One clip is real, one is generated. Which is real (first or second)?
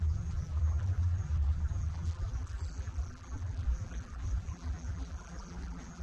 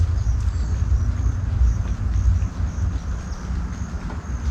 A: second